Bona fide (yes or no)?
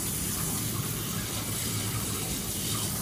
no